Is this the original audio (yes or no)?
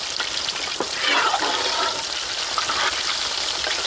yes